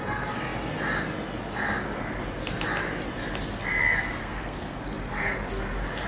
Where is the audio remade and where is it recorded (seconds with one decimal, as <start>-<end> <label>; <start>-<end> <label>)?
0.0-4.2 recorded; 4.2-4.8 remade; 4.8-6.1 recorded